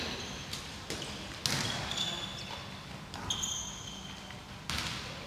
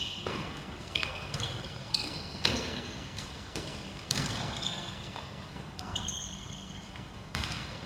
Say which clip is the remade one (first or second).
second